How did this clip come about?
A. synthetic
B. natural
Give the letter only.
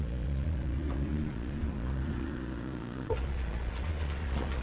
A